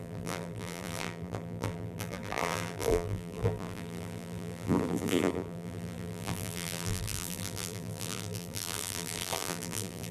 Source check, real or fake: fake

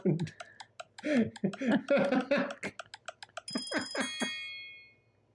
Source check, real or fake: real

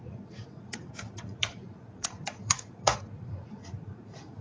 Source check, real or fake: fake